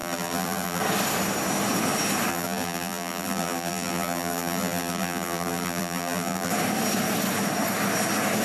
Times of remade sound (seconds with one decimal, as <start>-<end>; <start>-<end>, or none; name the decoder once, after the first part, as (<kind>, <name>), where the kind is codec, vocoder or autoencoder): 0.0-0.8 (vocoder, BigVGAN v2); 2.3-6.5